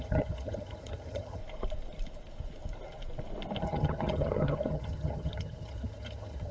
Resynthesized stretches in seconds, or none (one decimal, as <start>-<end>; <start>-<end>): 0.0-1.4; 3.6-6.5

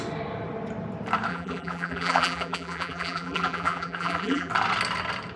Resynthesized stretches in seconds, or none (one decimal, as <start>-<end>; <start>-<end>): 1.3-4.5

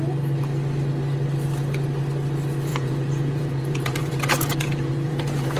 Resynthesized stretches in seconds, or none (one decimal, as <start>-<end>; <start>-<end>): 2.7-5.6

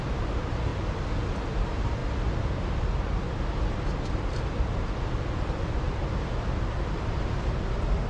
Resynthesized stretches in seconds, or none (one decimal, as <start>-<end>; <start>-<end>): 0.0-0.7; 1.2-2.0; 5.6-8.1

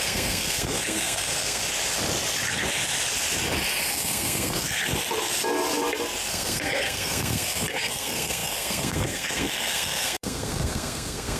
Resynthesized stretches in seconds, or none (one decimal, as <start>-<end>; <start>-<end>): 0.0-1.6; 3.9-4.8; 6.3-11.4